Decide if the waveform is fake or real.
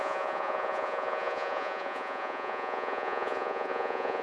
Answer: fake